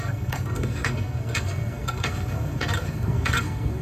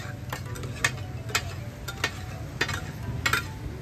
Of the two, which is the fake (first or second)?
first